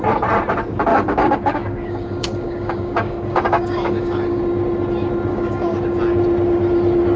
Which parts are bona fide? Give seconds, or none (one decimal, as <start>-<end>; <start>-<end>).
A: 0.0-0.9; 4.4-5.3; 6.0-7.2